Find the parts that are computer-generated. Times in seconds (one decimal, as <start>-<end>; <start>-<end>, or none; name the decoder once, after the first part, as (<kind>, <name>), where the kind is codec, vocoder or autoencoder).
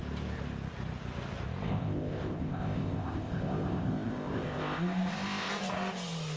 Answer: 1.7-5.5 (codec, ZipCodec)